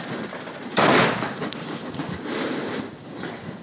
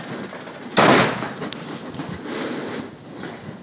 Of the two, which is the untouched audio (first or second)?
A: second